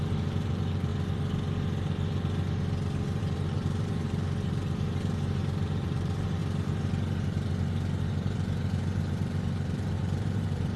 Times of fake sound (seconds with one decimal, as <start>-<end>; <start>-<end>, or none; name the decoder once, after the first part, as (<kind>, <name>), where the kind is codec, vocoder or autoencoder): 0.0-0.9 (vocoder, BigVGAN v2); 3.2-6.4; 8.0-10.8